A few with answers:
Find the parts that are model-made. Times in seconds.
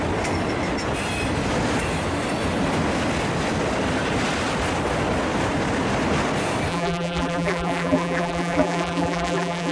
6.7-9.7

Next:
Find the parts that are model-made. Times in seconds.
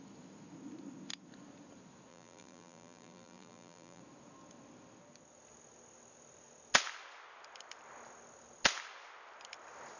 2.1-4.0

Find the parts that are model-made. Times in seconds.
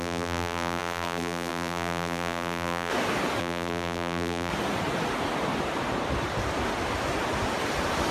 0.0-2.9; 3.4-4.5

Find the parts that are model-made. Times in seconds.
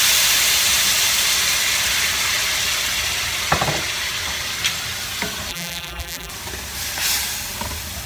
5.5-6.3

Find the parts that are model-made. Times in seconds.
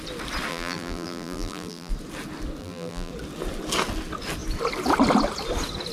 0.5-1.9; 2.6-3.1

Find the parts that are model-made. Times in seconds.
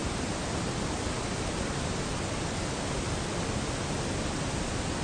none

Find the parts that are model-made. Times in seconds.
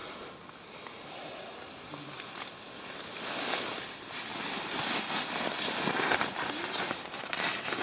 none